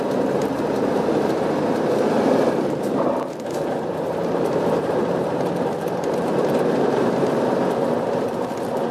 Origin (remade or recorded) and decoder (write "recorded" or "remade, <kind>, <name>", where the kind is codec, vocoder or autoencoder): remade, vocoder, BigVGAN v2